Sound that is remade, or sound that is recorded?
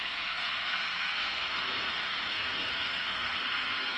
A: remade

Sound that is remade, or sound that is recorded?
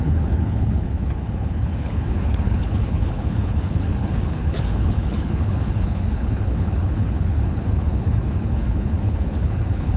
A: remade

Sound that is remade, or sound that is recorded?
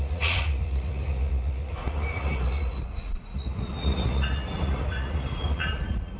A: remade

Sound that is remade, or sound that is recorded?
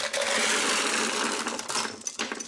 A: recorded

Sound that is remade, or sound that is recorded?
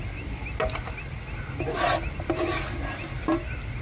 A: recorded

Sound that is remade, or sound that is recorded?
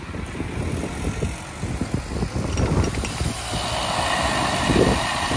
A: recorded